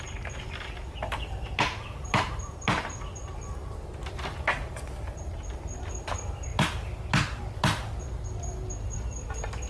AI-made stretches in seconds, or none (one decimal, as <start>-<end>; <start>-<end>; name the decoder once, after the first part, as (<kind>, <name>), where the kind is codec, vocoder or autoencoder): none